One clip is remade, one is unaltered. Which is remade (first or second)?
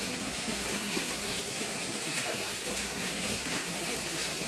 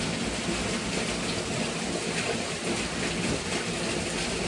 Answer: first